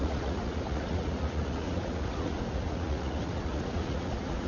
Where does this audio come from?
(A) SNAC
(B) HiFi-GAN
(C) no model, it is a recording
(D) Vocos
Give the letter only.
D